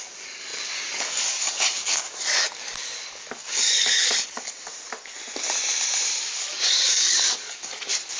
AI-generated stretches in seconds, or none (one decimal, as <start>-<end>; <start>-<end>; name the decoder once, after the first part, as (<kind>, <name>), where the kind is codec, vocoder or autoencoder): 0.0-4.7 (codec, DAC); 6.5-8.2